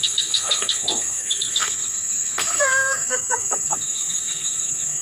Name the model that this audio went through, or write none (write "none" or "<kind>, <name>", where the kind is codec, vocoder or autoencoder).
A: codec, SNAC